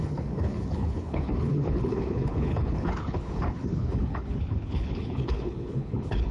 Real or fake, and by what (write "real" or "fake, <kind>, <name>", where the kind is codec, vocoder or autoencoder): fake, codec, HILCodec